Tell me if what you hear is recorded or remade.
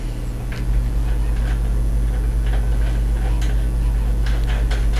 recorded